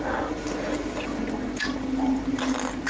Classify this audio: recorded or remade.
recorded